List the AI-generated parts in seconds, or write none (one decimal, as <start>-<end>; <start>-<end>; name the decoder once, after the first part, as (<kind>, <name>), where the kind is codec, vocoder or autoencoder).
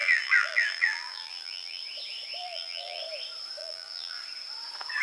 0.0-1.8 (vocoder, BigVGAN v2); 2.4-3.0; 3.6-4.2